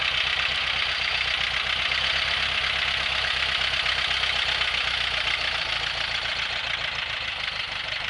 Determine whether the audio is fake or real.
real